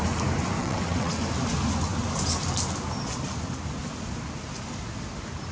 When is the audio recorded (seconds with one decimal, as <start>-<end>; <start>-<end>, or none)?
0.0-0.6; 1.2-5.5